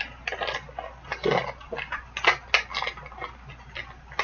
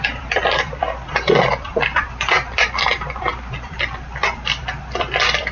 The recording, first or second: first